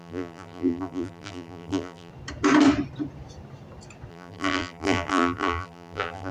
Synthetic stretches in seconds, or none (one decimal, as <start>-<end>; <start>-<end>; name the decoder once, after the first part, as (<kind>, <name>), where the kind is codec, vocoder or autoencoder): 0.0-2.1 (vocoder, BigVGAN v2); 4.1-6.3

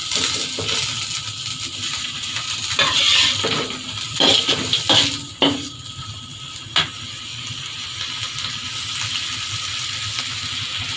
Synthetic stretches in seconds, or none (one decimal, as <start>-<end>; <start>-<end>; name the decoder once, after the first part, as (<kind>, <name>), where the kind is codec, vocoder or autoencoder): 3.0-5.1 (vocoder, BigVGAN v2)